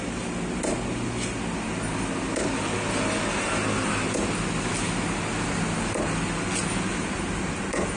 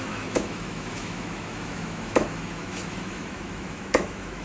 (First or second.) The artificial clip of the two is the second